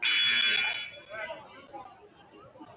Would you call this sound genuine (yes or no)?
yes